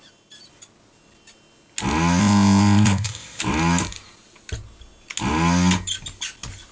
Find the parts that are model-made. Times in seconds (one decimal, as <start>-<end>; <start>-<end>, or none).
2.2-3.4